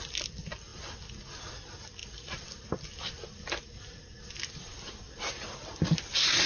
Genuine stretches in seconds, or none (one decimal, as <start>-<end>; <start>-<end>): 0.0-6.5